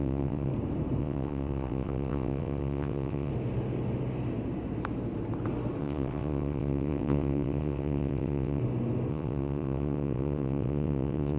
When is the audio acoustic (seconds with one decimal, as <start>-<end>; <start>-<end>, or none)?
0.5-1.0; 3.3-5.8; 8.6-9.1